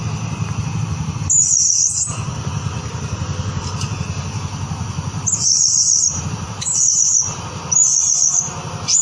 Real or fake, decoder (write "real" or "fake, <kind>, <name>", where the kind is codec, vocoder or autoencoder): real